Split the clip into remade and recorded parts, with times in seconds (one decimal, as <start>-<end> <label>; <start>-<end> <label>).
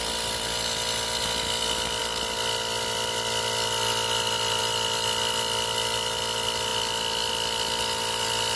0.0-8.6 recorded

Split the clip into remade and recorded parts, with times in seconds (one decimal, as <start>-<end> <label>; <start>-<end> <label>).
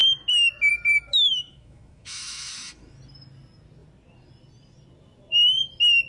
0.0-1.1 recorded; 1.1-3.0 remade; 3.0-6.1 recorded